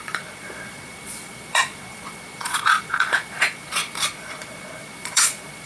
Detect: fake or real fake